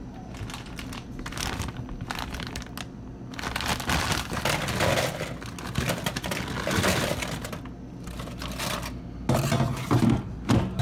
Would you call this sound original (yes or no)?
yes